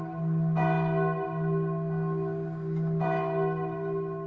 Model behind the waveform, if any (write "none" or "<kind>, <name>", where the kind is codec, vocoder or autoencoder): none